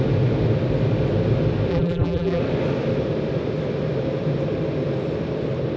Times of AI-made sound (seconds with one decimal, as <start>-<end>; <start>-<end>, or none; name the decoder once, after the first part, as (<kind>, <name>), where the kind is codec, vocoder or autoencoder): 1.7-2.4 (vocoder, BigVGAN v2)